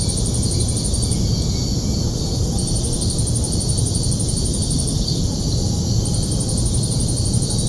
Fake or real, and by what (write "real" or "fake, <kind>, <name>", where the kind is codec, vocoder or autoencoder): fake, vocoder, BigVGAN v2